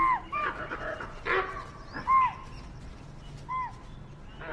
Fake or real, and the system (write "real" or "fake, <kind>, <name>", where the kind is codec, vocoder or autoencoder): real